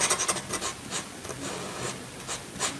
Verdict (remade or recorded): recorded